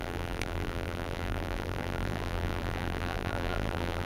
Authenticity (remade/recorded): remade